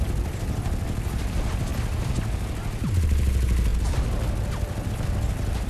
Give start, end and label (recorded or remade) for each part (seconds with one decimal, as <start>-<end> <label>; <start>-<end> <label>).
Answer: 0.0-5.7 recorded